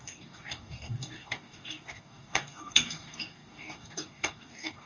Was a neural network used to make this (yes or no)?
yes